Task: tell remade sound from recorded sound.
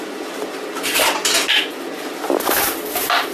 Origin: recorded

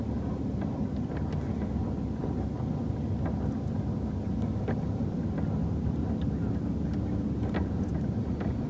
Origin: recorded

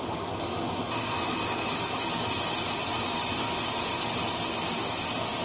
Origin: recorded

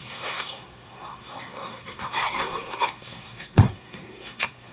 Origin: remade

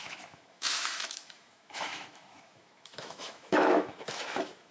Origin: remade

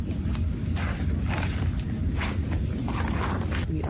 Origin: recorded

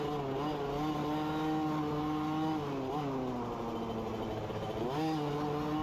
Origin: recorded